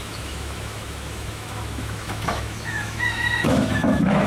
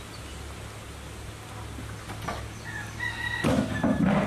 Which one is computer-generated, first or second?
first